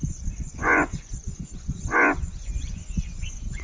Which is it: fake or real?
fake